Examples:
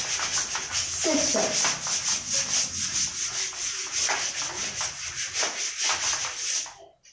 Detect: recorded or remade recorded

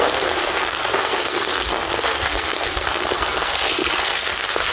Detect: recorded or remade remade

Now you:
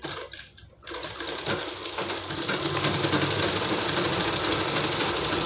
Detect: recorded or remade recorded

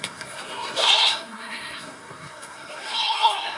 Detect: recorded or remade remade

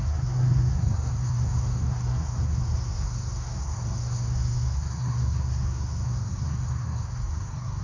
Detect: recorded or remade remade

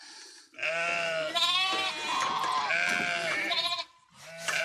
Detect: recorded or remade recorded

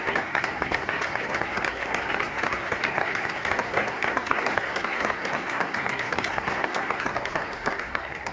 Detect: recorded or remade remade